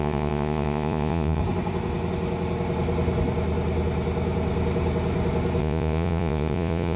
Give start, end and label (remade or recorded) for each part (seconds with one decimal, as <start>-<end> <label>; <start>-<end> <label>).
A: 0.0-1.4 remade; 1.4-5.6 recorded; 5.6-7.0 remade